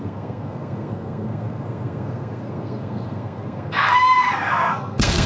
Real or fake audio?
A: fake